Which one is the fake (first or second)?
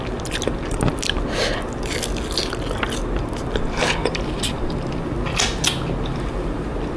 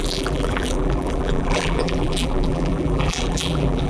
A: second